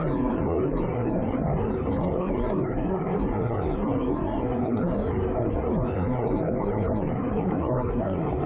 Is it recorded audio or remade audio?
remade